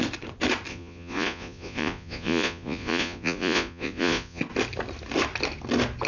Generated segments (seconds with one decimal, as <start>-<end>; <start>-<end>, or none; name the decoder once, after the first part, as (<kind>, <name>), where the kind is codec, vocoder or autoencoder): 0.7-4.4 (vocoder, Vocos)